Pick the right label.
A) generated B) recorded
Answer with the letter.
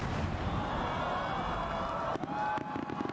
B